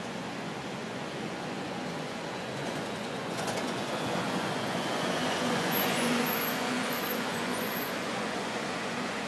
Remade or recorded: remade